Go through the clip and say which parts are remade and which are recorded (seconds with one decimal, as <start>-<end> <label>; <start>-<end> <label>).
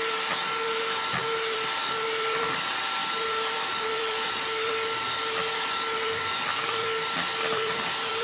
0.0-8.2 remade